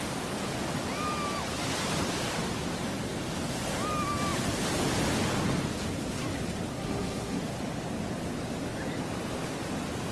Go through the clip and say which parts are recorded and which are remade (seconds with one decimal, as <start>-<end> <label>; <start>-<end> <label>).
0.0-6.7 recorded; 6.7-7.4 remade; 7.4-10.1 recorded